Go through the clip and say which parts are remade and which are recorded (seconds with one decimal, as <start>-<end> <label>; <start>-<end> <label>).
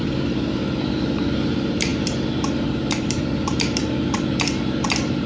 0.0-5.3 remade